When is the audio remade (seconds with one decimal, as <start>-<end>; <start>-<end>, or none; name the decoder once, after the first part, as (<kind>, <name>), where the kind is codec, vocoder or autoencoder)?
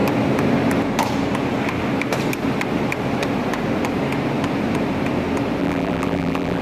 5.6-6.6 (vocoder, BigVGAN v2)